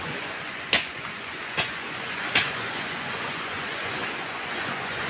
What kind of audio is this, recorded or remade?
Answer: remade